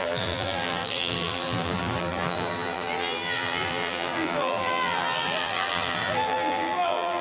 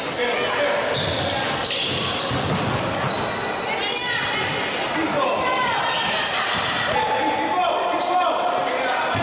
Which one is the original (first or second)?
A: second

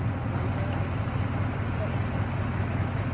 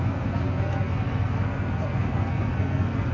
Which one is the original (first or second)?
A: first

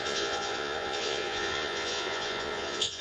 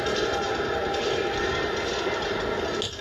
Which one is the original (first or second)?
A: second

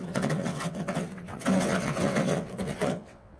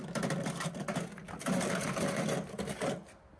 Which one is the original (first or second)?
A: second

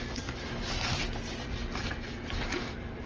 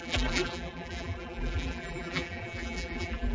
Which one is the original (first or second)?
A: first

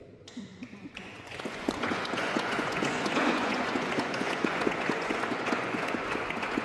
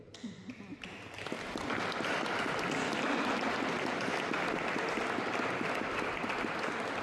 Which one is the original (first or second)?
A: second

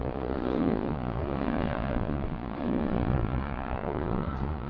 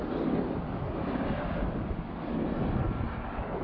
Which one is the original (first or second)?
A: second